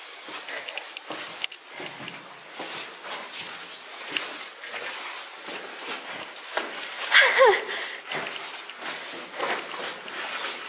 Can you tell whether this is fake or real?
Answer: real